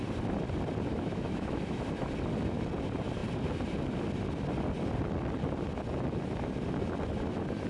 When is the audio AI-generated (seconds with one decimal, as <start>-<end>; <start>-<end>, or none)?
0.9-2.1